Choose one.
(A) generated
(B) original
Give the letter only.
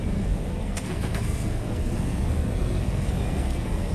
A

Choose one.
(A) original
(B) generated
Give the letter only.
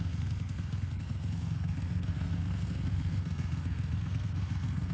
B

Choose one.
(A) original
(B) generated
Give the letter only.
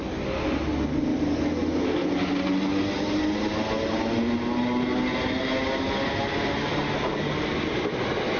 A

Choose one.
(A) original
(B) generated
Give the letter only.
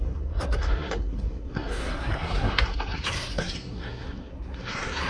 B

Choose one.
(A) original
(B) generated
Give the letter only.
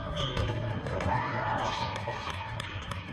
B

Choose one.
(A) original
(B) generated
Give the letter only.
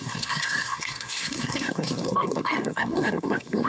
B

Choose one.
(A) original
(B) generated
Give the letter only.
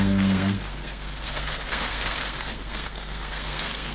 B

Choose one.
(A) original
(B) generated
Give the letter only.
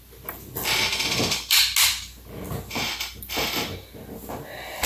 A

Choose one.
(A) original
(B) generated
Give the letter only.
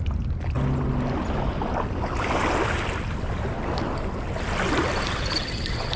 A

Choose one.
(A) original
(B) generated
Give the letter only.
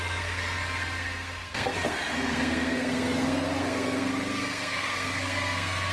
B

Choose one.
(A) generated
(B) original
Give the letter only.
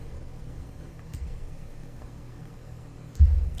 A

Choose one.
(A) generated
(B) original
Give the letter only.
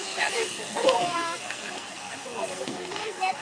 A